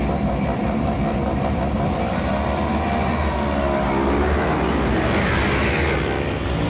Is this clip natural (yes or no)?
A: yes